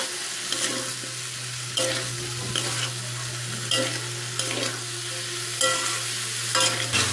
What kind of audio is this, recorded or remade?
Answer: recorded